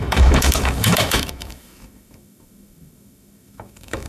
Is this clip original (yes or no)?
no